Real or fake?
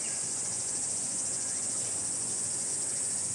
fake